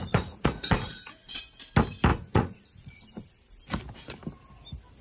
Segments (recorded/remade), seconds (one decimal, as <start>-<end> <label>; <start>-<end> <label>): 0.0-1.4 remade; 1.4-2.1 recorded; 2.1-3.5 remade; 3.5-5.0 recorded